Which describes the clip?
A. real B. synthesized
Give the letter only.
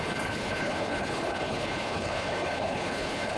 B